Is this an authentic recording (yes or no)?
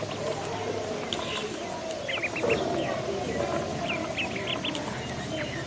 yes